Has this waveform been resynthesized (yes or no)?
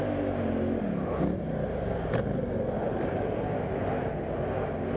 no